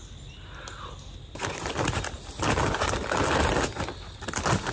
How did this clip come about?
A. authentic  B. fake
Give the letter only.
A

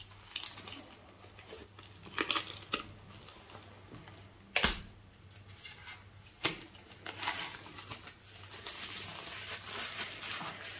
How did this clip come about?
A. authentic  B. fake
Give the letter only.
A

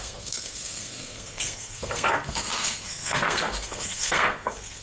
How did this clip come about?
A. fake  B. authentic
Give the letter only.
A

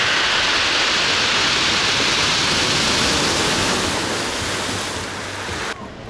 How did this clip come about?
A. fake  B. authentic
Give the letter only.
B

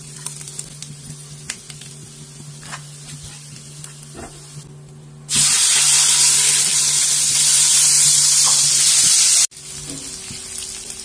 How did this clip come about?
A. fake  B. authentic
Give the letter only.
B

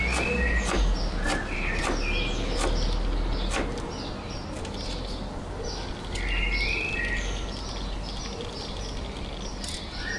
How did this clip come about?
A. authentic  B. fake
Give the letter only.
A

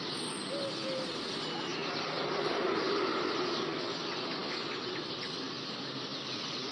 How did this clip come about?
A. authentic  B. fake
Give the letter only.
A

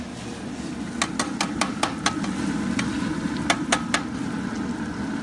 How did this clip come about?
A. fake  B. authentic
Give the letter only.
B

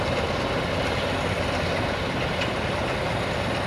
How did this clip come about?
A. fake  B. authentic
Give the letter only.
B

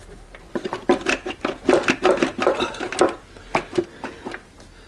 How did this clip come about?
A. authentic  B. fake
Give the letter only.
A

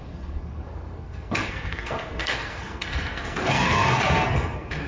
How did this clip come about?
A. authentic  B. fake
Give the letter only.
B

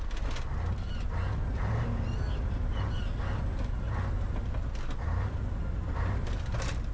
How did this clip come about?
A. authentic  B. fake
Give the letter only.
A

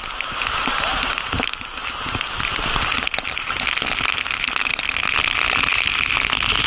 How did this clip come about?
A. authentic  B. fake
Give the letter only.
A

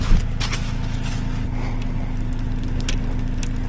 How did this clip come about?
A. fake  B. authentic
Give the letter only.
B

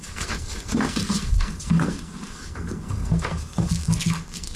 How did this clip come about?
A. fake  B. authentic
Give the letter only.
A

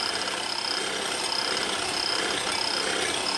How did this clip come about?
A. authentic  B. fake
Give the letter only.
A